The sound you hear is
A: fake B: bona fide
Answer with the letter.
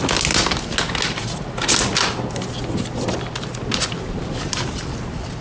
B